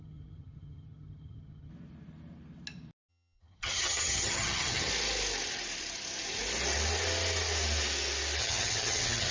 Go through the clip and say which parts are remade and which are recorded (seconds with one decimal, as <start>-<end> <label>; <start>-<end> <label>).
0.0-1.7 remade; 1.7-3.1 recorded; 3.1-4.9 remade; 4.9-8.4 recorded; 8.4-9.3 remade